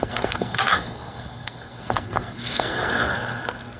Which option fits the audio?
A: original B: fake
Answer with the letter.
B